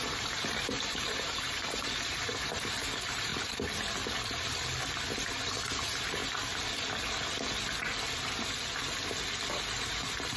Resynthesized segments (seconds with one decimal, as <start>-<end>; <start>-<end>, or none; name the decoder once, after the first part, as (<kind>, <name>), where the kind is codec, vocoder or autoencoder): 0.0-3.3 (vocoder, BigVGAN v2); 5.3-6.2; 9.9-10.4